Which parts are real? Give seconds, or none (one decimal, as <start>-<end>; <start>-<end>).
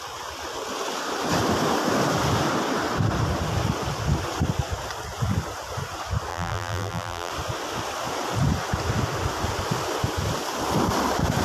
0.0-6.3; 7.3-11.4